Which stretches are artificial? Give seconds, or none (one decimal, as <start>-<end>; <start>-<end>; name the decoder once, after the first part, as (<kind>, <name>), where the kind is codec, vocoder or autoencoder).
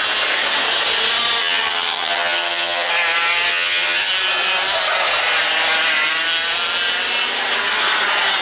1.4-2.9 (vocoder, HiFi-GAN); 3.5-4.1